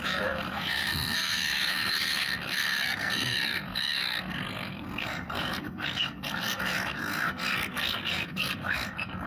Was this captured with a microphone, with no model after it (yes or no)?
no